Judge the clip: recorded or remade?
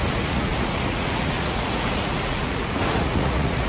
remade